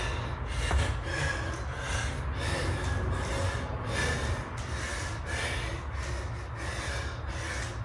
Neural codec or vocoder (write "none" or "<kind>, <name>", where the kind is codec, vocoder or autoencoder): none